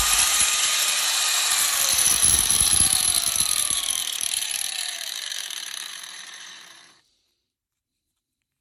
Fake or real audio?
fake